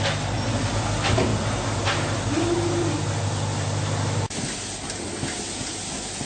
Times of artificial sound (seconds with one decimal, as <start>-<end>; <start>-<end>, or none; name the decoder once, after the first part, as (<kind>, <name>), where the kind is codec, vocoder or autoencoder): none